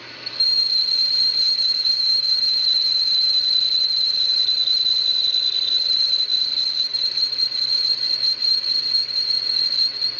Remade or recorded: recorded